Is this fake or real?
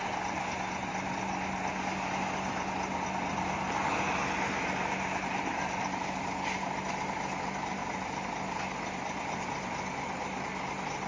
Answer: real